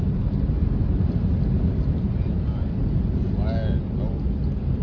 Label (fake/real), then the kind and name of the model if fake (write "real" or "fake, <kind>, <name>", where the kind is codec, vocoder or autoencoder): real